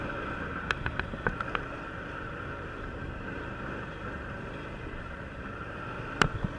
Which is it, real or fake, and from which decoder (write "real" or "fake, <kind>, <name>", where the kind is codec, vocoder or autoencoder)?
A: fake, vocoder, BigVGAN v2